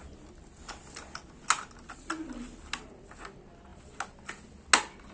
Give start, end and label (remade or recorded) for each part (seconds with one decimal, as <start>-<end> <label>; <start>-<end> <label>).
0.0-5.1 recorded